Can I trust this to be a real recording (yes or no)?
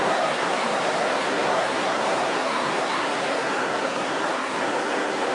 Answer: no